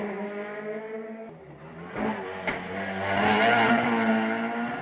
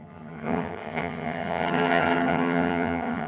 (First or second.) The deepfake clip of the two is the second